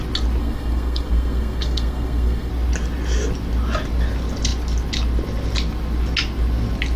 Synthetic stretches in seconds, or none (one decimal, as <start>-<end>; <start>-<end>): 0.4-2.5